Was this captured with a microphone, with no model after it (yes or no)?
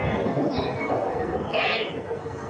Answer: no